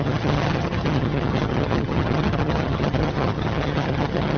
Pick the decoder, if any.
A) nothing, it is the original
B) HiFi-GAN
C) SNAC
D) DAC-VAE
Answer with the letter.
B